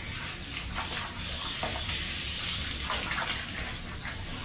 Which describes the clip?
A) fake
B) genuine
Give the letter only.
B